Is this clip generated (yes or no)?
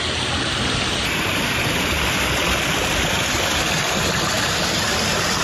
no